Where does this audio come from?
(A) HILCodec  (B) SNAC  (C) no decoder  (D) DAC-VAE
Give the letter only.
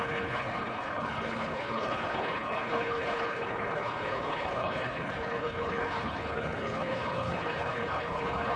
A